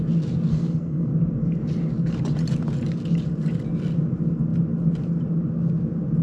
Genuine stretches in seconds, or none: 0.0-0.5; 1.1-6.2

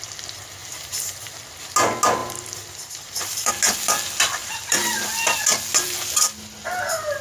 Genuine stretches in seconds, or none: 0.0-0.6; 1.4-2.2; 3.5-4.4; 5.0-7.2

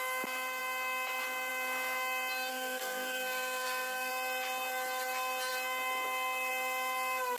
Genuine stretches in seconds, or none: 0.0-2.5; 4.1-7.4

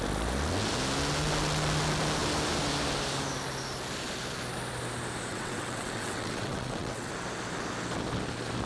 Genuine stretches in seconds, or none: 0.0-5.3; 7.1-8.7

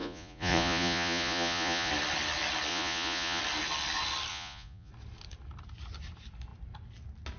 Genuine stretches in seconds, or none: 1.9-2.7; 3.4-4.3; 4.9-7.4

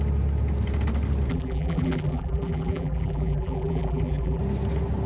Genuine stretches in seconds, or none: 0.0-1.3; 4.4-5.1